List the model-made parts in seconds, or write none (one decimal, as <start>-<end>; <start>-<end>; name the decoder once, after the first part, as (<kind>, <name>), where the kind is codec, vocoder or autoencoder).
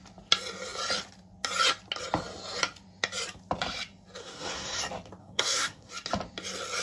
4.2-4.8 (codec, SNAC); 5.2-5.9